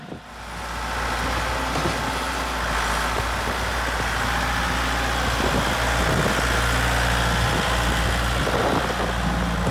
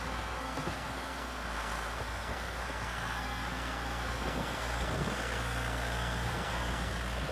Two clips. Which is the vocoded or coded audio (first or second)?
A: second